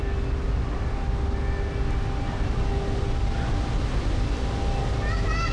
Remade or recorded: recorded